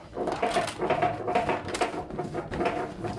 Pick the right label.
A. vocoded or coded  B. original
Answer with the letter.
B